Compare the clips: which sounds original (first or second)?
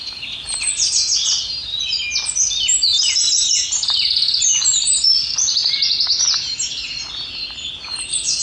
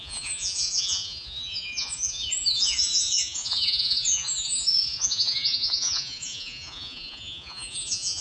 first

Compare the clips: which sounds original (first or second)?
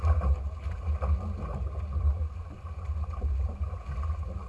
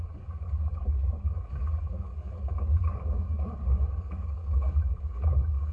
first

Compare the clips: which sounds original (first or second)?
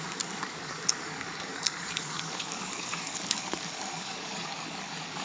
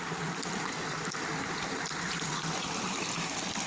second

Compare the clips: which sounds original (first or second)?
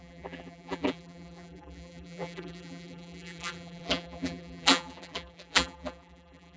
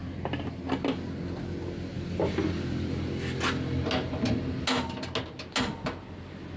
second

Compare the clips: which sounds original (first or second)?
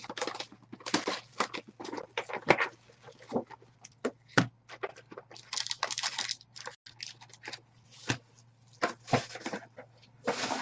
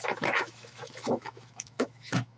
first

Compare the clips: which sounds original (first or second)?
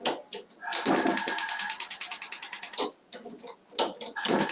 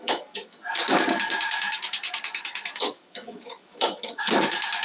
first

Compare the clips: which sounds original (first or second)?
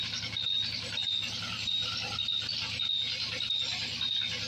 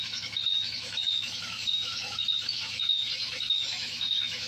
first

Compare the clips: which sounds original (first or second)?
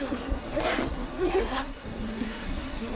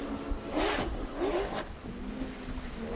second